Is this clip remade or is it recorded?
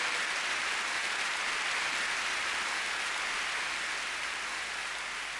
recorded